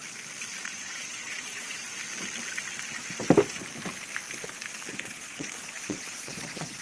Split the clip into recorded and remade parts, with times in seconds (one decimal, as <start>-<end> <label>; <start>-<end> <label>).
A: 0.0-0.6 recorded; 0.6-1.9 remade; 1.9-4.9 recorded; 4.9-6.8 remade